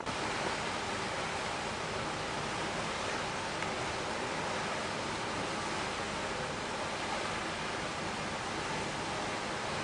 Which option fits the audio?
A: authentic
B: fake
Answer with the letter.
A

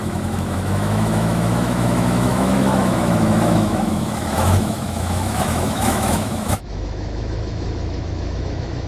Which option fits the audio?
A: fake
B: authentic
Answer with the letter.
A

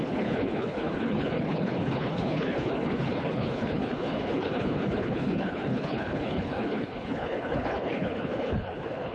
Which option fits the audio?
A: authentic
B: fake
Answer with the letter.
B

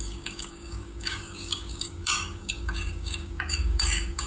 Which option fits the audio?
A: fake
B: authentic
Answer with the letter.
A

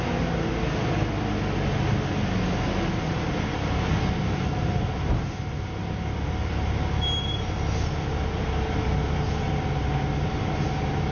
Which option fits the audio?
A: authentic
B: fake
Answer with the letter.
A